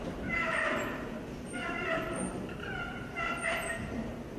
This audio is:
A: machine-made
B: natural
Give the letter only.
B